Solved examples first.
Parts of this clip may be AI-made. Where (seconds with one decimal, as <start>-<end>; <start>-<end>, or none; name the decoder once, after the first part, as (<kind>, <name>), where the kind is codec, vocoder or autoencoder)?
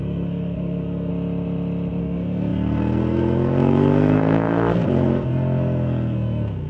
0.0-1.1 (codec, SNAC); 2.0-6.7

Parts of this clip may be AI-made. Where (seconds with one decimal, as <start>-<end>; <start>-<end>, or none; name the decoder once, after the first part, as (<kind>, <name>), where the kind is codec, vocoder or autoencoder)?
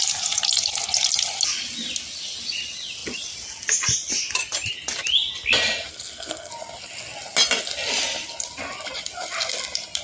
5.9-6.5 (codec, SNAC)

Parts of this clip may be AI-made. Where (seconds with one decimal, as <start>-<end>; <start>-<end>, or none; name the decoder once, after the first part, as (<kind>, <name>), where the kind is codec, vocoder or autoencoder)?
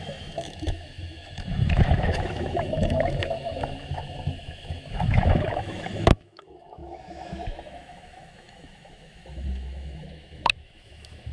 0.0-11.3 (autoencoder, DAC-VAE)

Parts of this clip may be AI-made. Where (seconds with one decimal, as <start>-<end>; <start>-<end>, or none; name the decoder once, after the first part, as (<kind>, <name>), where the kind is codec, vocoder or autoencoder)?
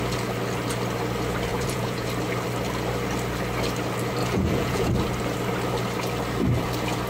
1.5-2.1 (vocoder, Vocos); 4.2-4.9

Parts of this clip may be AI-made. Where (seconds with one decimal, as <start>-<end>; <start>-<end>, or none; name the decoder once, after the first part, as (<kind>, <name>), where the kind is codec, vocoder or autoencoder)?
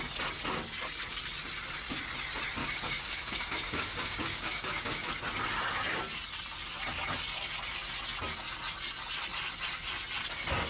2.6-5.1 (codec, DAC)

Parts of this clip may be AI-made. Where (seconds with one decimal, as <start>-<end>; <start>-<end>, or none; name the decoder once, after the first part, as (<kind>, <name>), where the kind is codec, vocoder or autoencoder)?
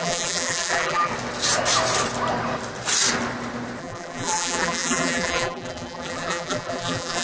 0.0-1.1 (vocoder, BigVGAN v2); 3.8-7.2